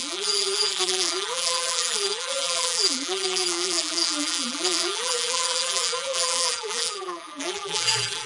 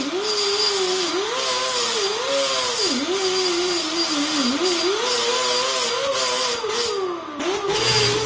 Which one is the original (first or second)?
second